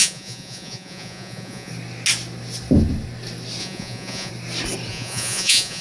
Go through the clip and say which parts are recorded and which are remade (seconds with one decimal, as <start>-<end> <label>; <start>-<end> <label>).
0.0-1.7 remade; 1.7-3.6 recorded; 3.6-4.3 remade; 4.3-4.9 recorded; 4.9-5.8 remade